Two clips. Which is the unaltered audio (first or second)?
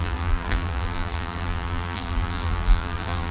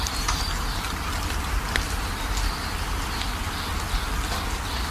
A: second